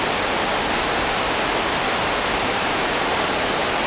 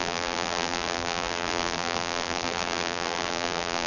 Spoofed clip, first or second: second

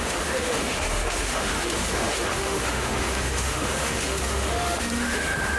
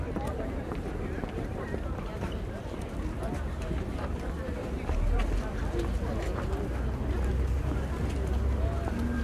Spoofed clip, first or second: first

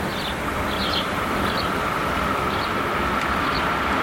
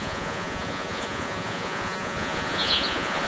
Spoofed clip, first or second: second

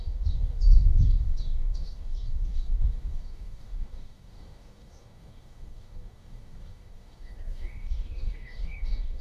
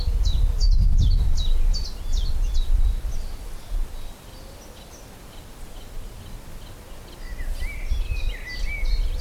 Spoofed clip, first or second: first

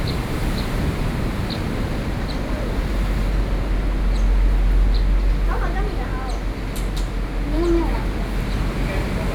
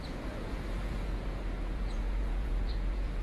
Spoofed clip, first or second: second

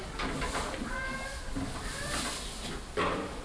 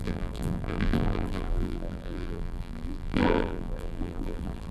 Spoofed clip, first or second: second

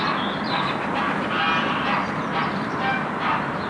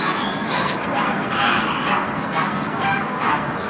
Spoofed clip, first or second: second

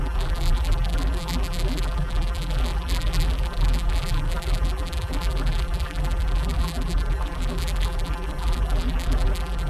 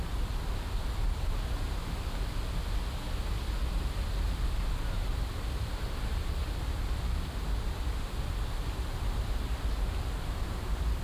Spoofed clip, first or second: first